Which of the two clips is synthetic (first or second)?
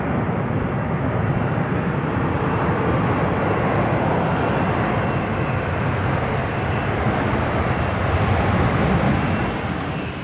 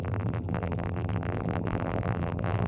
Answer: second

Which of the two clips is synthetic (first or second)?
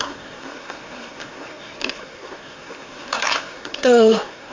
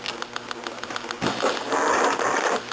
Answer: first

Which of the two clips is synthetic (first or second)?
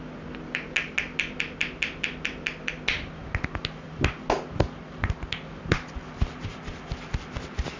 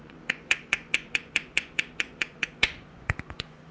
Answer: second